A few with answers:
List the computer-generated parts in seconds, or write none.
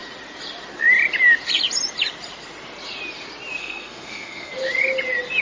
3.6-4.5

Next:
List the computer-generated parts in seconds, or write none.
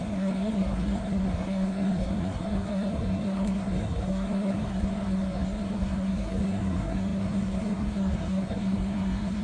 0.0-9.4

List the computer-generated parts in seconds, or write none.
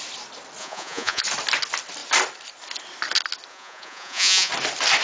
0.6-1.2; 3.5-4.5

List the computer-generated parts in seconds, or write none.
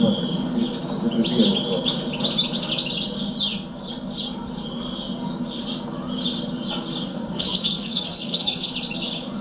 7.1-8.7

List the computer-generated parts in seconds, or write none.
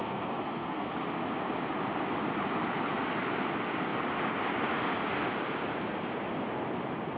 0.0-0.9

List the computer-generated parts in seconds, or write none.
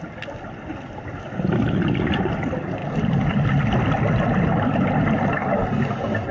none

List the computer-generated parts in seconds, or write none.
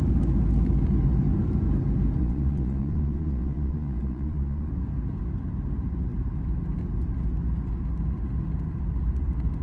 2.2-4.7